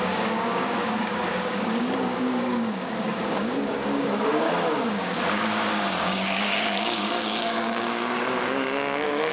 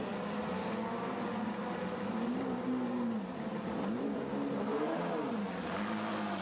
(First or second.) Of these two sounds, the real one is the second